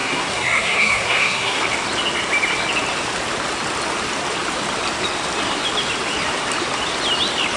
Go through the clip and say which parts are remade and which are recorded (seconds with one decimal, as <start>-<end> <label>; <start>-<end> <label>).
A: 0.0-1.6 remade; 1.6-7.6 recorded